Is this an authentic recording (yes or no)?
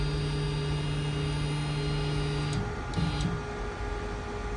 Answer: yes